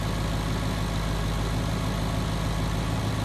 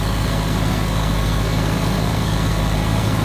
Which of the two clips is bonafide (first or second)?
first